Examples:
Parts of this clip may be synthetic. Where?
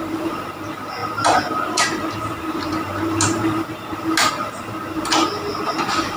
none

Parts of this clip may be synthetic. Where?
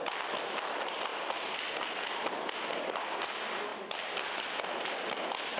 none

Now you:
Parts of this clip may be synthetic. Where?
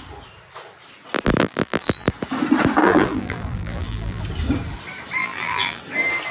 1.4-2.1 (vocoder, BigVGAN v2); 2.8-4.2; 5.2-5.8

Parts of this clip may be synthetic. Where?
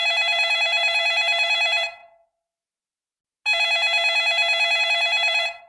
0.0-2.0 (vocoder, BigVGAN v2); 4.8-5.7